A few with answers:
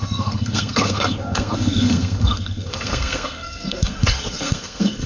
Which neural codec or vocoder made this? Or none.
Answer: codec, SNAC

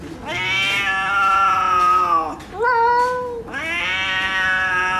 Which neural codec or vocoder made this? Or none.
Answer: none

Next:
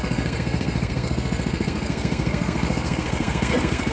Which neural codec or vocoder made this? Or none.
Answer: codec, SNAC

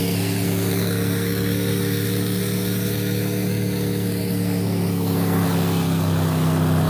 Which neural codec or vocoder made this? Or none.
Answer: codec, SNAC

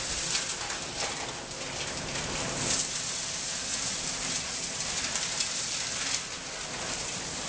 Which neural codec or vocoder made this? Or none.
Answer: none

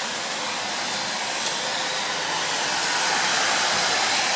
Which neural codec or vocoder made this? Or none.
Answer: none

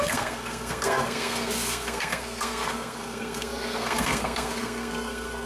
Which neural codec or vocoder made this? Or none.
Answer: codec, SNAC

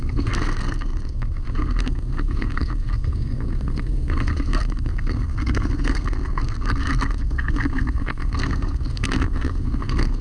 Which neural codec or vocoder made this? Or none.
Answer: codec, SNAC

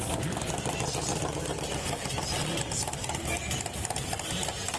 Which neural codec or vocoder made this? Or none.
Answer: none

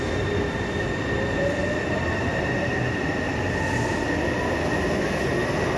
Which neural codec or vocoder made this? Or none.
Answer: none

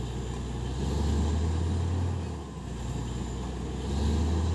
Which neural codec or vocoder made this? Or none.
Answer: none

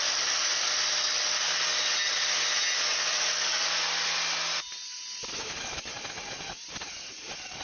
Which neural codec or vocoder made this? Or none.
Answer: none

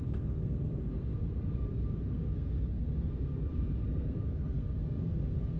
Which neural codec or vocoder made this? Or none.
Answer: codec, SNAC